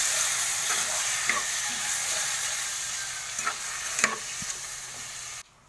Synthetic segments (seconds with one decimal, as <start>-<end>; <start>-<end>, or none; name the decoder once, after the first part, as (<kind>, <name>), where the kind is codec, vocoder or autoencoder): 2.0-2.6 (vocoder, Vocos)